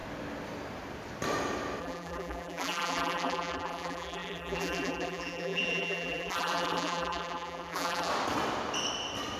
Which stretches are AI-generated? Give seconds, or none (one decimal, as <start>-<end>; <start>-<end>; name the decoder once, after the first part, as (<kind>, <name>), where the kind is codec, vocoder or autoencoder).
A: 1.8-8.1 (vocoder, BigVGAN v2)